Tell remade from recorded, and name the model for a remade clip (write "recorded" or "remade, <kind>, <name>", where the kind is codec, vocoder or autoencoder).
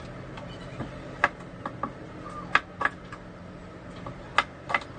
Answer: recorded